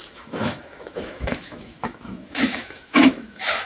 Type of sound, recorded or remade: remade